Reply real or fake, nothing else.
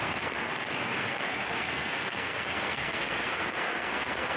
fake